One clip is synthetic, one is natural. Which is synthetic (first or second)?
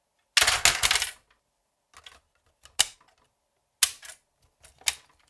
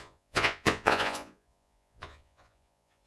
second